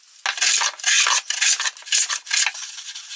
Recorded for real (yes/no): yes